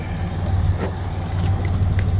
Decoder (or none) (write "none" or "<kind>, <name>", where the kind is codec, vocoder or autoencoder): none